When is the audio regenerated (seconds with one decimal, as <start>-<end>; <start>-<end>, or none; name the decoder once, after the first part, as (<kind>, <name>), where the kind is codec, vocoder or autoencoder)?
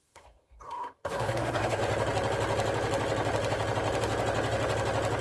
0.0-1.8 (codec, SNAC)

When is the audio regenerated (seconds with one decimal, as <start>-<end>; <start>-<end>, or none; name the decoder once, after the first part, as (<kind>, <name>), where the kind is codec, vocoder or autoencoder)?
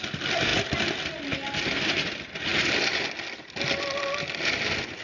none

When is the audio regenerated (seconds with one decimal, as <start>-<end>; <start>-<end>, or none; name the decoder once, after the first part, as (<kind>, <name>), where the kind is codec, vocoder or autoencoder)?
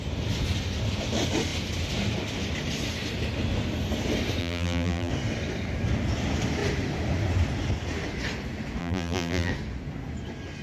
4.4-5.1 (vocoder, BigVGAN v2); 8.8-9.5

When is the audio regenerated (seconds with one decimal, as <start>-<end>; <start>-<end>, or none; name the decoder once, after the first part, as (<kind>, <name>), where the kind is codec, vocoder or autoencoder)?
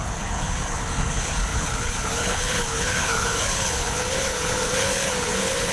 0.0-5.7 (codec, HILCodec)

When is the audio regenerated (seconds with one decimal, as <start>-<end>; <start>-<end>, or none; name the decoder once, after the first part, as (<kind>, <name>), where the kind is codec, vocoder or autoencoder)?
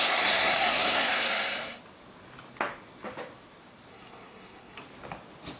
0.0-1.8 (codec, SNAC); 3.9-4.8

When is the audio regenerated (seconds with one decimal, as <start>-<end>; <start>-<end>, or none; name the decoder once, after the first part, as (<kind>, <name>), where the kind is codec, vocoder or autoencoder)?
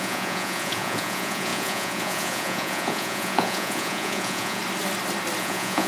0.0-4.6 (vocoder, Vocos); 5.4-5.9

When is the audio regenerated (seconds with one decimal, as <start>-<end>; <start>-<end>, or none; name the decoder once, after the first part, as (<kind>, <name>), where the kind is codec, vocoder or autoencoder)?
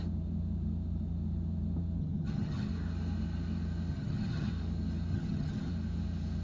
2.0-2.7 (vocoder, HiFi-GAN); 3.9-4.5; 5.1-5.7